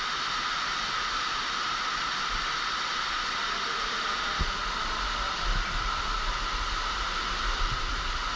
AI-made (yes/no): no